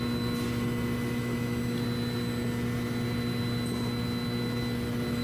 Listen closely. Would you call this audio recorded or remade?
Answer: recorded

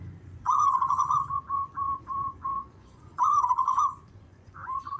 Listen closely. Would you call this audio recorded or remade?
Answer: remade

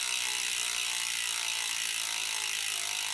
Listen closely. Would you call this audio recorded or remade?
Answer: recorded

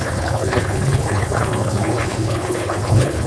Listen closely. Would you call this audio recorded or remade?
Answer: remade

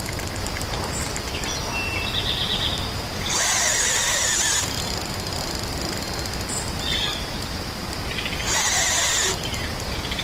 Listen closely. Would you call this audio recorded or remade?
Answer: recorded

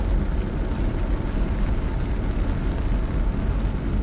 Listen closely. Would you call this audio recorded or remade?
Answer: recorded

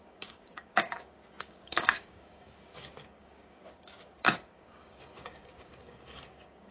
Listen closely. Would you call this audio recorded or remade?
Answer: remade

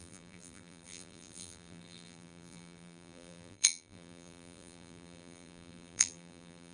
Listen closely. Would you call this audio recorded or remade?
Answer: remade